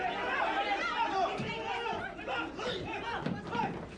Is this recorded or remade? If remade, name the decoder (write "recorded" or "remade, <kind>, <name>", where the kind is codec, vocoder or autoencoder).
recorded